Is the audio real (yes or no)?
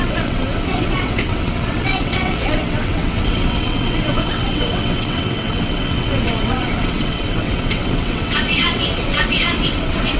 no